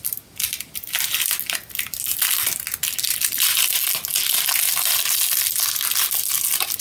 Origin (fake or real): real